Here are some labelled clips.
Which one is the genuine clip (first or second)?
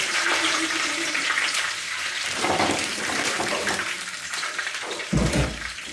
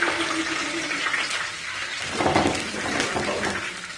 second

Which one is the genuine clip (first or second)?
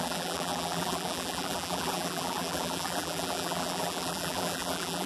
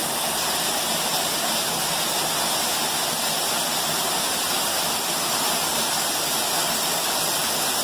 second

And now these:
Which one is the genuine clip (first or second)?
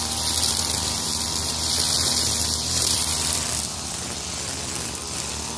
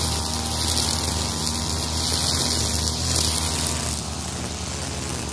second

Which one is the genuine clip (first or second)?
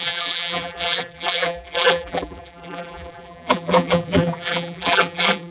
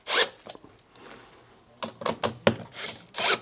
second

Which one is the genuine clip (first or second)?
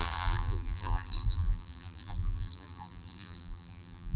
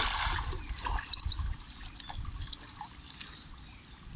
second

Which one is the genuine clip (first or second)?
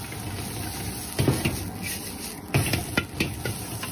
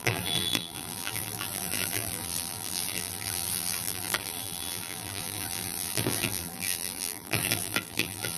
first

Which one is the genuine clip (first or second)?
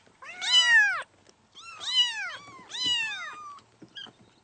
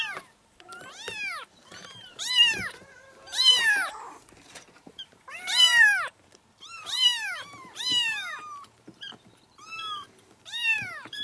first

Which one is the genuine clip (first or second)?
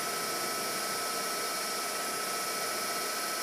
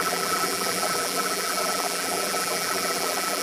first